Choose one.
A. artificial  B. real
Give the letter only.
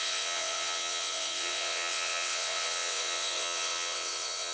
A